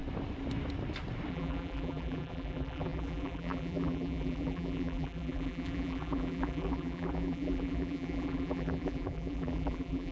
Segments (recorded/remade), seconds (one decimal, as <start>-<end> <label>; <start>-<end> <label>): 0.0-1.3 recorded; 1.3-10.1 remade